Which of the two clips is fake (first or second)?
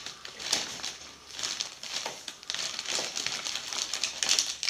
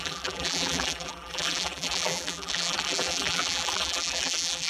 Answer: second